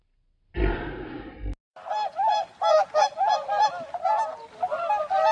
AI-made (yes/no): no